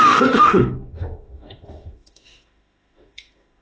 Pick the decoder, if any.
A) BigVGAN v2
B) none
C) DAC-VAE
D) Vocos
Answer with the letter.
C